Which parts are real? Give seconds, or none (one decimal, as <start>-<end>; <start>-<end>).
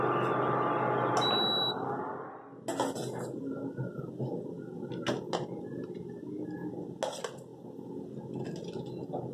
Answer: 0.0-9.3